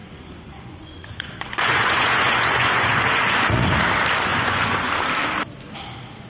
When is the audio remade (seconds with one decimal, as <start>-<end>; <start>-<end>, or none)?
0.0-3.8; 4.3-4.9